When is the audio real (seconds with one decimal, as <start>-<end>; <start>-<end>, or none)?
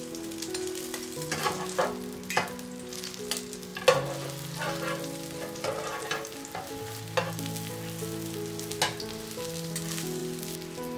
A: 0.0-11.0